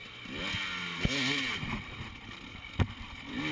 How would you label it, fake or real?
real